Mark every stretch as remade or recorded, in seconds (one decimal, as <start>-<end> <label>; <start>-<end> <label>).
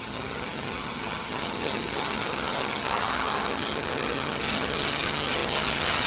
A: 0.0-6.1 remade